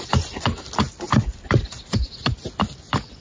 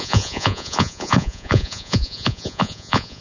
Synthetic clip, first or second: second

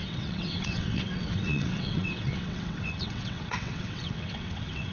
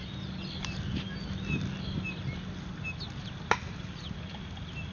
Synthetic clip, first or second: first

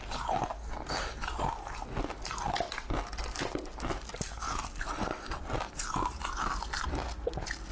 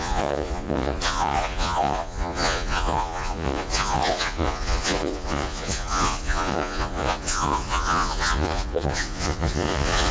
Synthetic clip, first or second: second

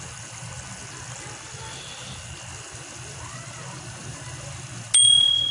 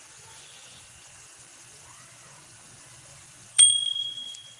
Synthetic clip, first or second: second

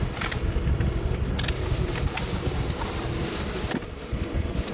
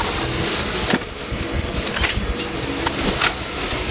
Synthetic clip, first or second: first